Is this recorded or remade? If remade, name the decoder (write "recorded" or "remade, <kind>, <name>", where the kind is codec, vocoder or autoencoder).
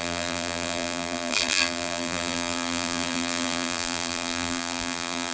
remade, vocoder, BigVGAN v2